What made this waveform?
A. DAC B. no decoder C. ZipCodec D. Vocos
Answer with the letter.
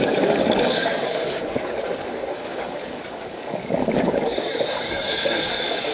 A